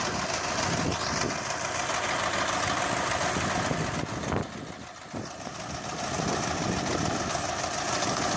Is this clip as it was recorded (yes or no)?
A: yes